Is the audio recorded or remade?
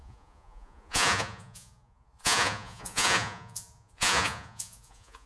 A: remade